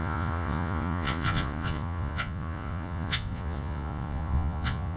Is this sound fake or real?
fake